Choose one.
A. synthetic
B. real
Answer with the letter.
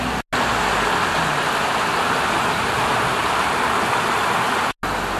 B